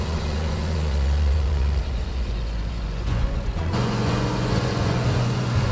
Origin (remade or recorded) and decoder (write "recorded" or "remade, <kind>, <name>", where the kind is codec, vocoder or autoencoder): remade, vocoder, Vocos